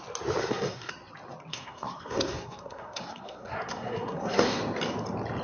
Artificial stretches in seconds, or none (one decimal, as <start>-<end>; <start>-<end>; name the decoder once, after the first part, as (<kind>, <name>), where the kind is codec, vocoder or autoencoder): 0.4-0.9 (codec, SNAC); 1.5-4.6